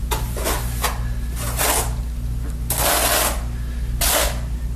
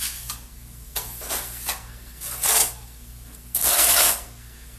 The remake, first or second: second